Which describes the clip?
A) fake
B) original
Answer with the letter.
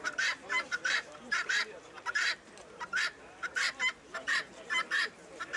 A